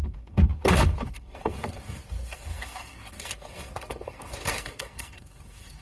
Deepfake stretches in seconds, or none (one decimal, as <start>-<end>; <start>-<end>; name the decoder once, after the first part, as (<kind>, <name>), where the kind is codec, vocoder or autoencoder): 0.0-5.8 (codec, SNAC)

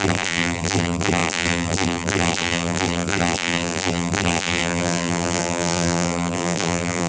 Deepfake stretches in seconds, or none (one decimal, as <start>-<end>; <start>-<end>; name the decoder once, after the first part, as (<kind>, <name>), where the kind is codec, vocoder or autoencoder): 0.0-7.1 (vocoder, BigVGAN v2)

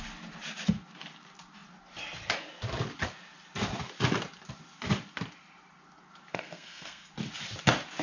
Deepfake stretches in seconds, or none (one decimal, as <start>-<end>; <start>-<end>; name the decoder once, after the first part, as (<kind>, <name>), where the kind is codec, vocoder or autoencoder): 6.3-7.1 (codec, SNAC)

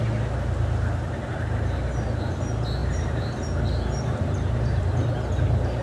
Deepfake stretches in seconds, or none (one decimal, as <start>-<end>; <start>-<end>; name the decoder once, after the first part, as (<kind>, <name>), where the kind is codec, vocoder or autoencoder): 2.8-4.8 (vocoder, BigVGAN v2)

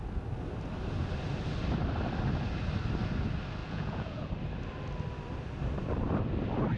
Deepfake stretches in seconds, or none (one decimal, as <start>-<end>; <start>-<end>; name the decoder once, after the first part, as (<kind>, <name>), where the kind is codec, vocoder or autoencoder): 3.6-4.3 (vocoder, Vocos)

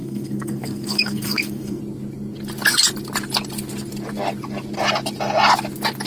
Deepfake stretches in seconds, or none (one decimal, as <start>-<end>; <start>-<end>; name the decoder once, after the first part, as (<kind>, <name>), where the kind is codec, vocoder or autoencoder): 0.0-1.8 (codec, SNAC)

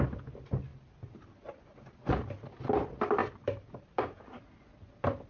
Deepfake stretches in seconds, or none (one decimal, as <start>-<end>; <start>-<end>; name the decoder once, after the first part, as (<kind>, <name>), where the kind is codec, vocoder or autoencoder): 3.2-4.5 (vocoder, BigVGAN v2)